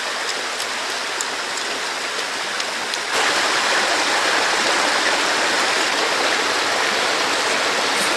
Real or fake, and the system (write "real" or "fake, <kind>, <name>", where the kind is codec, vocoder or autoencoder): real